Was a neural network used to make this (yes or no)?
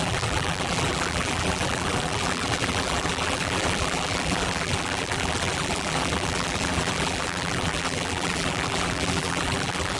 yes